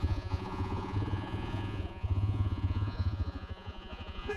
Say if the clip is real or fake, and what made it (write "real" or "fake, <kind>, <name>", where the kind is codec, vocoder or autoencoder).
fake, vocoder, Vocos